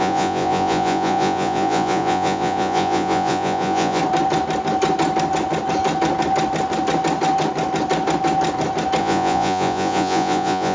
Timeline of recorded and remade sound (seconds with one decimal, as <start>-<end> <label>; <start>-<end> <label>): 0.0-4.0 remade; 4.0-9.0 recorded; 9.0-10.7 remade